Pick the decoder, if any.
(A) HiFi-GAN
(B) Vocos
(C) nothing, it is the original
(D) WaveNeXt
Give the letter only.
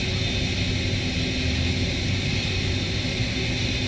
C